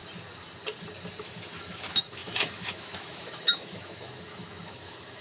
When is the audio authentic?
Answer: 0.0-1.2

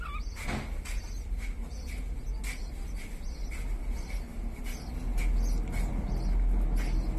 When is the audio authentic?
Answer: 0.0-7.2

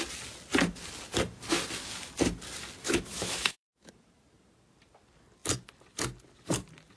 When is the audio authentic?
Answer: 0.0-2.8; 3.9-7.0

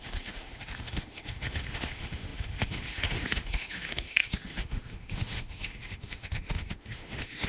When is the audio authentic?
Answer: none

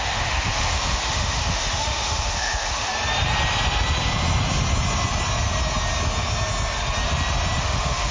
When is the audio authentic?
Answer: 2.9-7.6

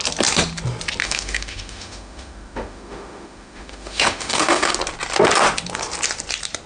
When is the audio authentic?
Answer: 0.0-1.0; 4.7-6.7

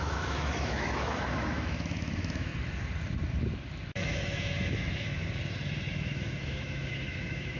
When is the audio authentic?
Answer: 2.5-3.9; 5.2-5.9